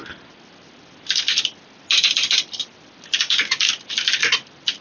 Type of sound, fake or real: real